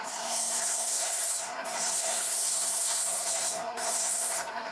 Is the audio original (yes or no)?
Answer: no